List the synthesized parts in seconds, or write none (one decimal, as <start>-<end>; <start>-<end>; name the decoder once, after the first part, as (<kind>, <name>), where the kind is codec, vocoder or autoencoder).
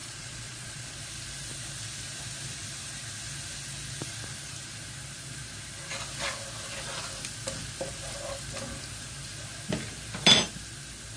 0.0-0.9 (vocoder, Vocos)